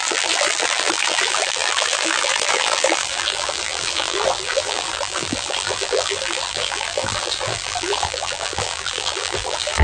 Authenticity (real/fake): fake